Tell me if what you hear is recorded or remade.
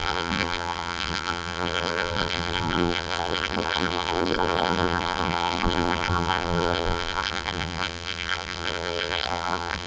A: remade